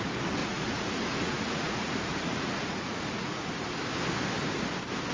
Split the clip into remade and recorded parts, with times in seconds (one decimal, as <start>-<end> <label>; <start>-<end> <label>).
0.0-0.4 recorded; 0.4-3.5 remade; 3.5-5.1 recorded